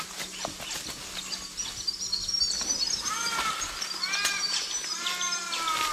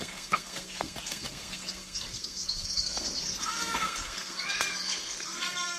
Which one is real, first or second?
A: first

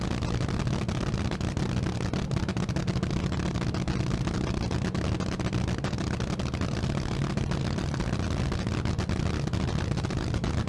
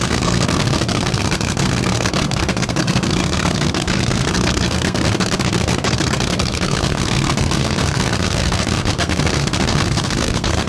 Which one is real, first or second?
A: first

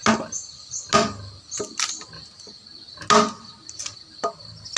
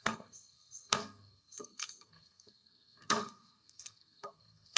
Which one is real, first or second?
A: first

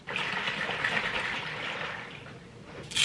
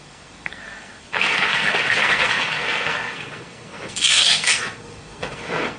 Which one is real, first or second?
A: first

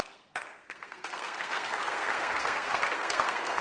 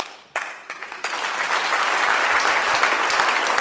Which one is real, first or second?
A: second